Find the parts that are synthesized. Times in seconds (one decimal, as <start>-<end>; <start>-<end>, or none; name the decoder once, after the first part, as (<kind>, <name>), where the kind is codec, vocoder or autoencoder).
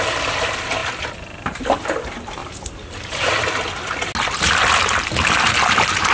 2.4-3.4 (vocoder, BigVGAN v2)